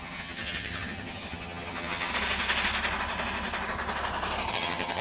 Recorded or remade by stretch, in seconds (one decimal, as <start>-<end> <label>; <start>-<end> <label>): 0.0-2.1 remade; 2.1-4.5 recorded; 4.5-5.0 remade